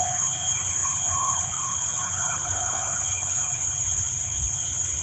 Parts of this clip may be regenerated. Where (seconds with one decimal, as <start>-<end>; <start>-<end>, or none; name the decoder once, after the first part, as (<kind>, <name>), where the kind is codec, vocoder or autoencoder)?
0.0-5.0 (codec, HILCodec)